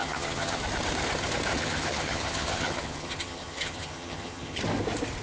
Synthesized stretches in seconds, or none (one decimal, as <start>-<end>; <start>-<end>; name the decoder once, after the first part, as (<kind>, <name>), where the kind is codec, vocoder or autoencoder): 0.0-0.6 (vocoder, HiFi-GAN); 1.5-4.6